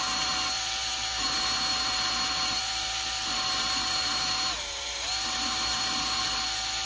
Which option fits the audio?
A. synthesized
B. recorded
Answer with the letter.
A